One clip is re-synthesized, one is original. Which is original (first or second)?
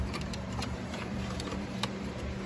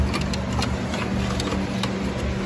second